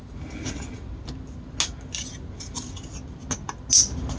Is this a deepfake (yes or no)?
no